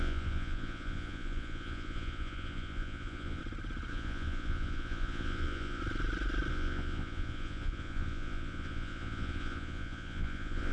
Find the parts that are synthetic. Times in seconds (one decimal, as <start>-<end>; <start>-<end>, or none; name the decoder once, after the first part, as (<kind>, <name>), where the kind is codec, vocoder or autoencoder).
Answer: 0.0-3.4 (vocoder, Vocos); 3.9-5.8; 6.5-10.7